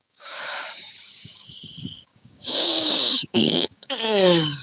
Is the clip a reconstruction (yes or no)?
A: yes